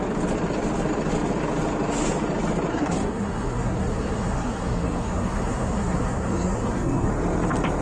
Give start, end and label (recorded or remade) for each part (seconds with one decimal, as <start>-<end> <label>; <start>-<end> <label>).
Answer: 0.0-2.7 recorded; 2.7-7.1 remade; 7.1-7.8 recorded